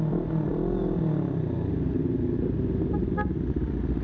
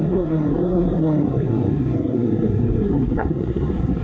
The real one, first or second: first